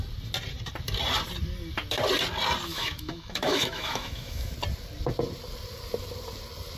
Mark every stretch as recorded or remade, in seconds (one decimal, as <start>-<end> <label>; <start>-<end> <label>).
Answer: 0.0-2.7 recorded; 2.7-4.5 remade; 4.5-6.8 recorded